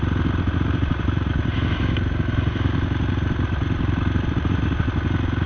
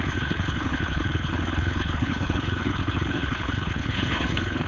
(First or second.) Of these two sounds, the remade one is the second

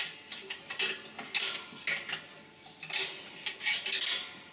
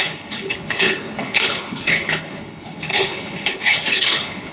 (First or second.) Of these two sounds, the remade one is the second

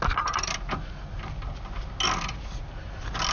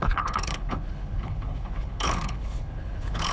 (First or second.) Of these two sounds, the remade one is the second